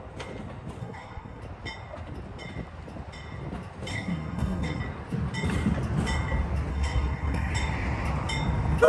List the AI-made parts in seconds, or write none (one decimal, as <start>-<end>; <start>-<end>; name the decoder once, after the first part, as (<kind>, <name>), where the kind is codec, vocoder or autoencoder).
0.8-1.4 (codec, SNAC); 3.9-4.8; 6.7-7.5